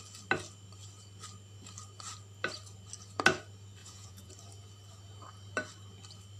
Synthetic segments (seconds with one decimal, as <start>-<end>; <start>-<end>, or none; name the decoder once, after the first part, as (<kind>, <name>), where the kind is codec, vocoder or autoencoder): 3.8-4.3 (vocoder, Vocos)